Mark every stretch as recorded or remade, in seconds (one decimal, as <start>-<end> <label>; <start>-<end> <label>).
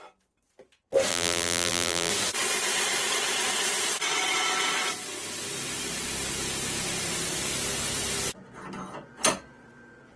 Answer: 0.0-1.1 recorded; 1.1-2.1 remade; 2.1-10.2 recorded